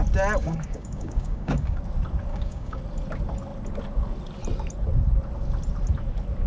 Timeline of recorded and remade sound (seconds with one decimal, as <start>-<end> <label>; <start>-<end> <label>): 0.0-0.4 recorded; 0.4-1.8 remade; 1.8-2.3 recorded; 2.3-2.8 remade; 2.8-6.5 recorded